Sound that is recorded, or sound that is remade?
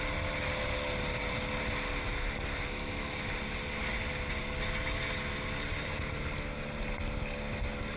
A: recorded